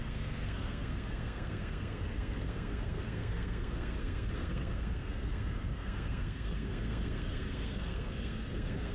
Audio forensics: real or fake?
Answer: fake